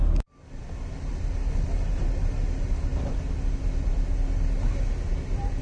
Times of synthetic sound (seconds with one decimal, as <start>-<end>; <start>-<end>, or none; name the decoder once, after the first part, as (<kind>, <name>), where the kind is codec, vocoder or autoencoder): none